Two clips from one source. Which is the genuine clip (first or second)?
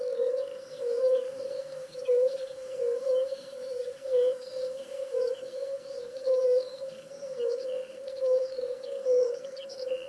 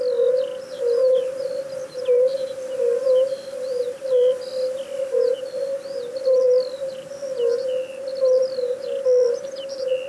second